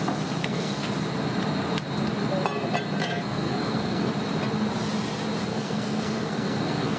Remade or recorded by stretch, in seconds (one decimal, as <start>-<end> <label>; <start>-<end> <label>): 0.0-0.4 recorded; 0.4-0.9 remade; 0.9-3.0 recorded; 3.0-4.1 remade; 4.1-5.5 recorded; 5.5-7.0 remade

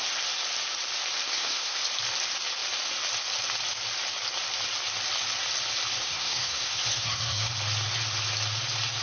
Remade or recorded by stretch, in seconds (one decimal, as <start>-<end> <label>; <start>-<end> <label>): 0.0-1.3 recorded; 1.3-1.8 remade; 1.8-6.0 recorded; 6.0-7.5 remade; 7.5-9.0 recorded

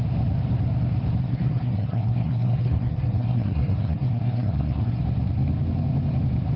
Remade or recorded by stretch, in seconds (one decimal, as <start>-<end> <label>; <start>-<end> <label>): 0.0-1.2 recorded; 1.2-5.0 remade; 5.0-6.6 recorded

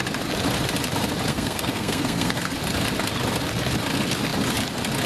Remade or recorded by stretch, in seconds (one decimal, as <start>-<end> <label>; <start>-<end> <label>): 0.0-1.3 recorded; 1.3-2.5 remade; 2.5-5.1 recorded

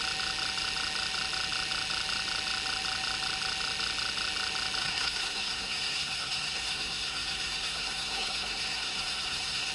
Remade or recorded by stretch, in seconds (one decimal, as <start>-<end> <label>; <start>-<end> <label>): 0.0-4.8 recorded; 4.8-9.7 remade

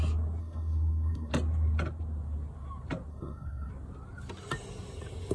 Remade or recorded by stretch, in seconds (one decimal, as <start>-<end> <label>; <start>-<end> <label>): 0.0-0.4 recorded; 0.4-1.3 remade; 1.3-3.1 recorded; 3.1-3.7 remade; 3.7-5.3 recorded